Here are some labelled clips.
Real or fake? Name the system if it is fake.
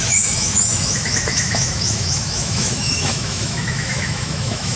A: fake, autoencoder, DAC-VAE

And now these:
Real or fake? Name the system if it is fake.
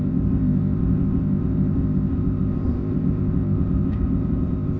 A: fake, codec, ZipCodec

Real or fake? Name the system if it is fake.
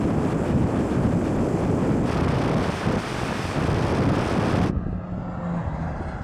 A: real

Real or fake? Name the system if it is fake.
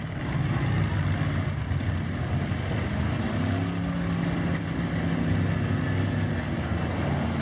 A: real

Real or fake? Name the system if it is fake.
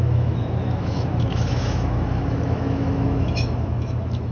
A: fake, autoencoder, DAC-VAE